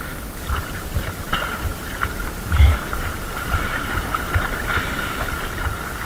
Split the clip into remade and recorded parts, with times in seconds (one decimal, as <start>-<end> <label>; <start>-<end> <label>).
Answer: 0.0-1.7 recorded; 1.7-5.4 remade; 5.4-6.1 recorded